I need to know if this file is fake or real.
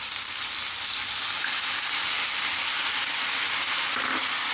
real